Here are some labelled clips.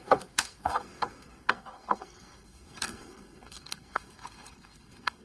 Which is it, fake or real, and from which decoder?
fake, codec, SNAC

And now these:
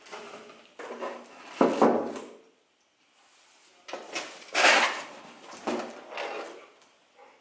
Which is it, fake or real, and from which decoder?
real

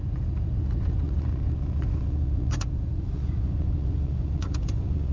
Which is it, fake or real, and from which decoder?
fake, vocoder, Vocos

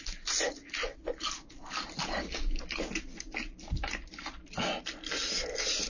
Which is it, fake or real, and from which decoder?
real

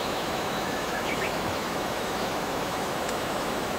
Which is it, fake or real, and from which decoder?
fake, autoencoder, DAC-VAE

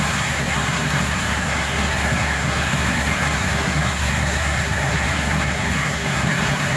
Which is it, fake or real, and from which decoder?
fake, codec, SNAC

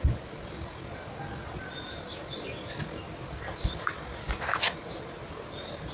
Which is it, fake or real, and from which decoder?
real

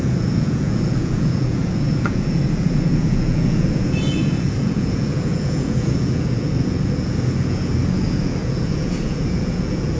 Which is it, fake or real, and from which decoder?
fake, vocoder, Vocos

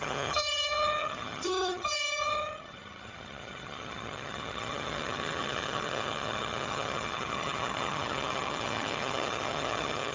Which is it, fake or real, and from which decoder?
fake, vocoder, HiFi-GAN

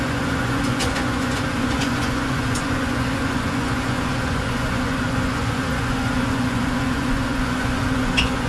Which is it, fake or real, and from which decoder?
fake, vocoder, Vocos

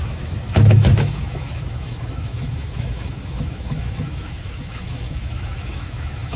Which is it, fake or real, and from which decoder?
fake, autoencoder, DAC-VAE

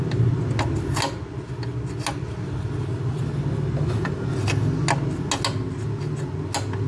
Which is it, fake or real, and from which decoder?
real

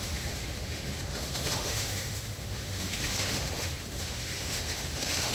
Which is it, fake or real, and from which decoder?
fake, autoencoder, DAC-VAE